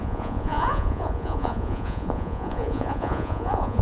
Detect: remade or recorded remade